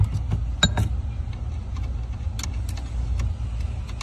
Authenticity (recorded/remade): recorded